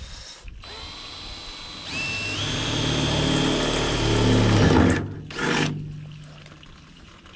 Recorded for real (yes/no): yes